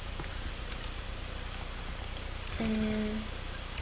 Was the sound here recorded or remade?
recorded